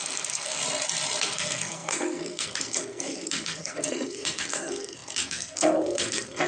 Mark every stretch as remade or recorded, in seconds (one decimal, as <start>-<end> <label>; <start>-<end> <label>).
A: 0.0-0.6 remade; 0.6-1.2 recorded; 1.2-6.5 remade